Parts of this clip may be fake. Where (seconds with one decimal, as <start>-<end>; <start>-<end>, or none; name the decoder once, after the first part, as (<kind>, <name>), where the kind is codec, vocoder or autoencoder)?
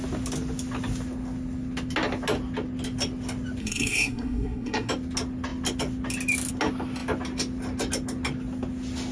3.6-4.9 (codec, SNAC)